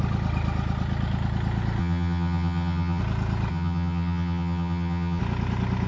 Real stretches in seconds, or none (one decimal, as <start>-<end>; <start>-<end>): 0.0-1.8; 3.0-3.5; 5.2-5.9